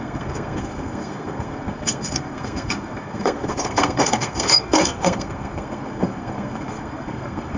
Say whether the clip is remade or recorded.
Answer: remade